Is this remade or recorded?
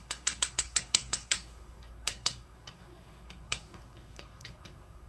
remade